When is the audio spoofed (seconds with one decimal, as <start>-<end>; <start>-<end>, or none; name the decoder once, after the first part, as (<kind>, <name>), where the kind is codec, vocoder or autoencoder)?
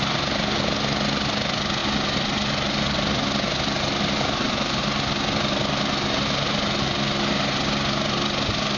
none